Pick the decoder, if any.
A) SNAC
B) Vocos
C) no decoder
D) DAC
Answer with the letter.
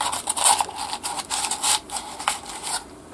C